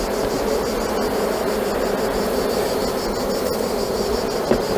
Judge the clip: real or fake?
real